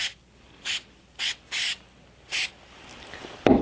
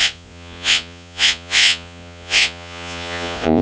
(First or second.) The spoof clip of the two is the second